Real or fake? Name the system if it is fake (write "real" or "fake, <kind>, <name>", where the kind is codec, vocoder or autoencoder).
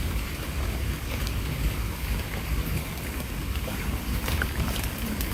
fake, codec, DAC